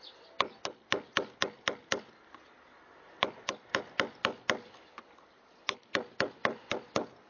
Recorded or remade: recorded